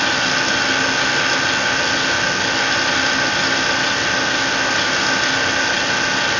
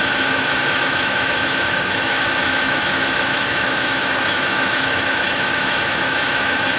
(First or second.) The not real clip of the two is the second